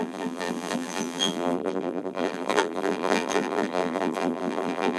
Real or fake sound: fake